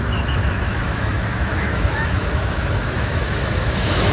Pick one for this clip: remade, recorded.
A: remade